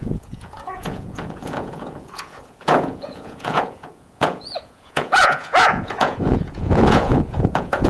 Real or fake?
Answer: fake